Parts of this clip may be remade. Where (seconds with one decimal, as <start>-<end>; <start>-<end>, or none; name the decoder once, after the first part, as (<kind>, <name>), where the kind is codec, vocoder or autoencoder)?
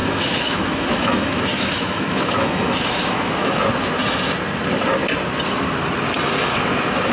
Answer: 0.0-3.6 (autoencoder, DAC-VAE)